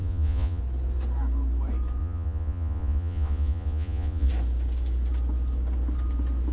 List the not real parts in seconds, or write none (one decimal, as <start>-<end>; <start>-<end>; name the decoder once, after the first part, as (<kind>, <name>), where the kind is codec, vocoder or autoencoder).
0.0-0.6 (vocoder, Vocos); 2.0-4.3